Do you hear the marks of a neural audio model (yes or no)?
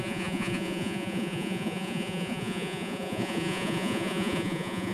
yes